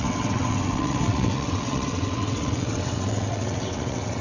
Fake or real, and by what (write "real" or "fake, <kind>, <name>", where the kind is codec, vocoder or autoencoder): fake, vocoder, WaveNeXt